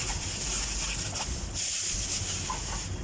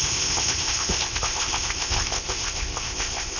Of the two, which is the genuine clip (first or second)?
first